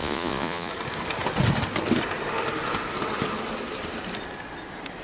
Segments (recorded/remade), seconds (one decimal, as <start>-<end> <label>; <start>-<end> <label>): 0.0-0.7 remade; 0.7-5.0 recorded